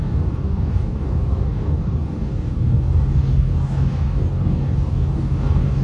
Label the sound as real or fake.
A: fake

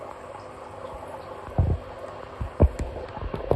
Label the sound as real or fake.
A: real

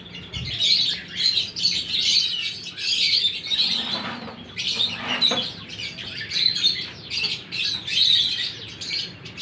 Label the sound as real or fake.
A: real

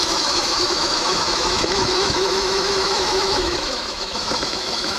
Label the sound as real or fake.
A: fake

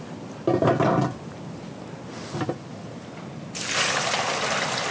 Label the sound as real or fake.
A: real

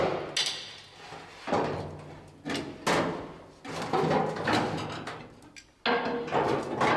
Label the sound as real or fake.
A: real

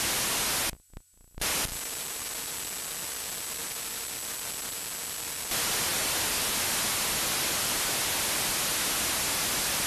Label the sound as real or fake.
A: real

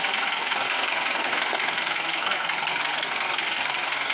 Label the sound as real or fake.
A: fake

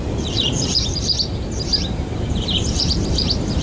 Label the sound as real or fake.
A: fake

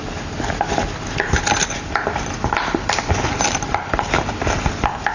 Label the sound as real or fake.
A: real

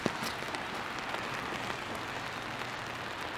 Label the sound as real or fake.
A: real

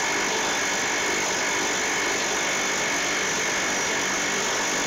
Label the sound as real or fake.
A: real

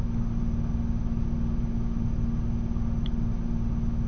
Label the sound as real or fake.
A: real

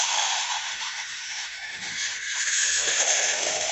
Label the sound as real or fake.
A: fake